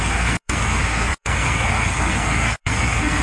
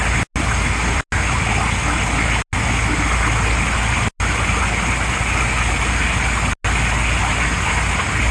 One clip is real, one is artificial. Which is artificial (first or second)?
first